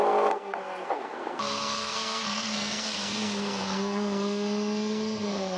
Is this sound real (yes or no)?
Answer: no